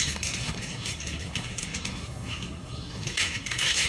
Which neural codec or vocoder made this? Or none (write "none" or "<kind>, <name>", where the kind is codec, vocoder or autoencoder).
codec, SNAC